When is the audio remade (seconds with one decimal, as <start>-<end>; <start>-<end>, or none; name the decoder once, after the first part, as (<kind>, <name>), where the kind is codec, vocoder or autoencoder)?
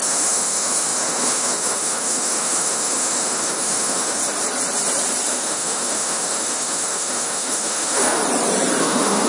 0.0-4.2 (autoencoder, DAC-VAE); 5.3-8.2; 8.8-9.3